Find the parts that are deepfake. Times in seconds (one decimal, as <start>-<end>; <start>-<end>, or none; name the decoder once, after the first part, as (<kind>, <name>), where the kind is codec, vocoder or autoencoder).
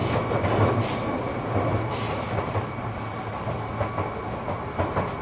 none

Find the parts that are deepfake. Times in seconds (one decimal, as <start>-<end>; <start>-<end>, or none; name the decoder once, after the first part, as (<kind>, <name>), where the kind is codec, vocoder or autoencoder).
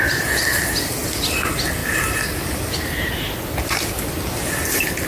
none